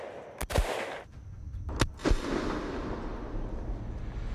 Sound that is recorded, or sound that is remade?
recorded